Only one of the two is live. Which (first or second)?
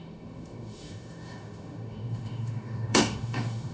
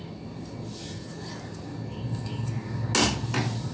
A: second